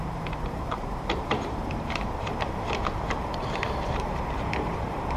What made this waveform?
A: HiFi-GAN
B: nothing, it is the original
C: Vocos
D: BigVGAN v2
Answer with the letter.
D